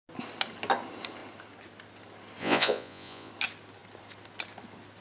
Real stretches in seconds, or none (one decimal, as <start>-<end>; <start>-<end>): 0.0-2.4; 3.3-5.0